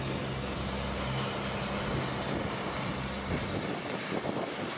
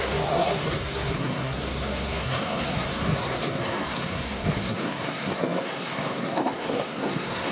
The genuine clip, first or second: first